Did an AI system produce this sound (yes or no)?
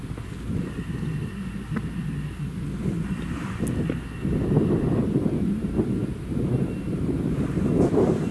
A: no